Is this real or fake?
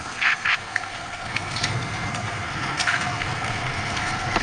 fake